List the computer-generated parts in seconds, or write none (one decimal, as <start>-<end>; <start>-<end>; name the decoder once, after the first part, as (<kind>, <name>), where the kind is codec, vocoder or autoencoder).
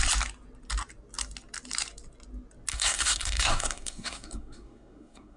2.7-5.4 (codec, SNAC)